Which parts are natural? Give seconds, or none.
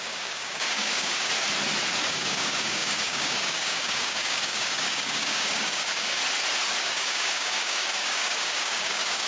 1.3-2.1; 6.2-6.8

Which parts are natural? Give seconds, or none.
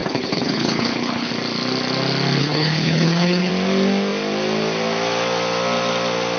1.3-2.4; 3.5-6.4